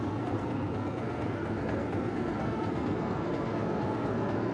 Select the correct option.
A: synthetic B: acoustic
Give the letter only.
A